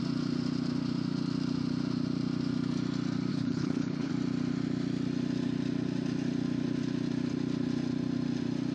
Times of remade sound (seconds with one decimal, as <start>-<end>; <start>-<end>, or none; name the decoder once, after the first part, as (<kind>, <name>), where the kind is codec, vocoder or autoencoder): 3.3-4.1 (codec, HILCodec)